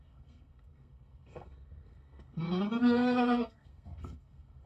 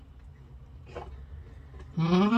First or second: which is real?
second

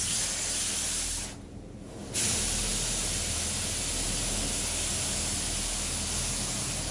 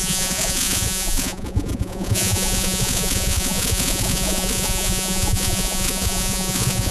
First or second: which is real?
first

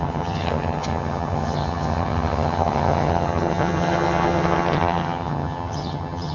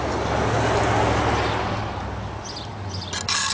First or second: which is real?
second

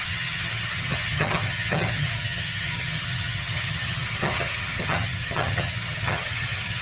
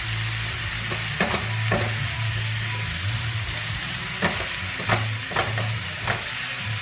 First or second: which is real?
second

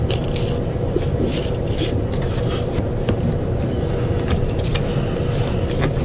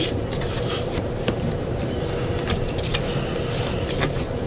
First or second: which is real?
first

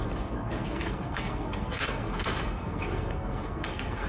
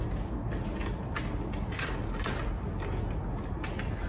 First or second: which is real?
second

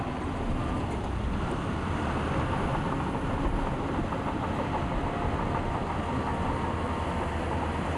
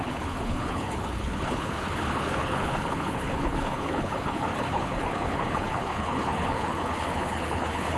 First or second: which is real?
first